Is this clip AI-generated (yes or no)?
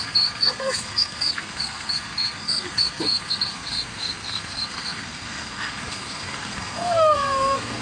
yes